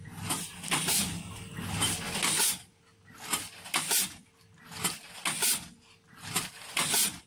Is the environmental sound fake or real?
real